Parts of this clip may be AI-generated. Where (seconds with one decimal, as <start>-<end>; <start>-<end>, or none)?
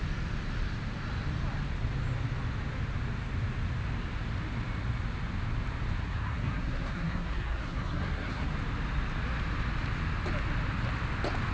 6.0-8.5